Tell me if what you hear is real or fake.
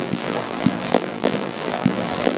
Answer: fake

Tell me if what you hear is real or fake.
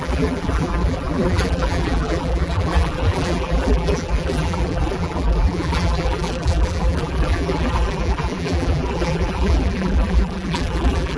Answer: fake